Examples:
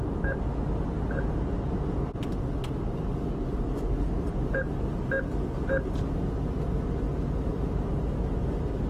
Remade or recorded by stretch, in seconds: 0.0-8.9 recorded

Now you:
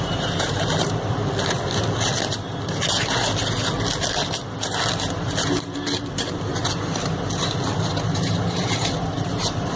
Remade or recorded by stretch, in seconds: 0.0-1.2 remade; 1.2-6.0 recorded; 6.0-6.6 remade; 6.6-7.9 recorded; 7.9-9.8 remade

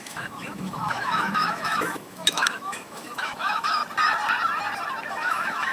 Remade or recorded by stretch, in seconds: 0.0-3.8 remade; 3.8-5.1 recorded; 5.1-5.7 remade

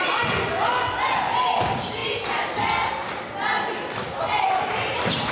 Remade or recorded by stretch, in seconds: 0.0-5.3 recorded

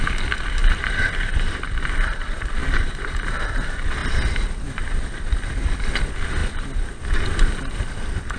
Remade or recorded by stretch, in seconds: 0.0-0.6 recorded; 0.6-1.9 remade; 1.9-2.6 recorded; 2.6-3.1 remade; 3.1-8.4 recorded